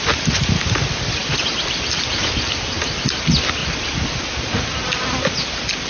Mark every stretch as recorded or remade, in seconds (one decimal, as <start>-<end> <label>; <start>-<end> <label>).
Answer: 0.0-5.9 recorded